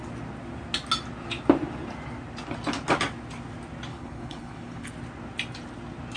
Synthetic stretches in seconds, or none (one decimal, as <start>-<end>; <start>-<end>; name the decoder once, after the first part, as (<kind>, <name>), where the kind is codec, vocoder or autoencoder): 3.9-4.9 (codec, HILCodec)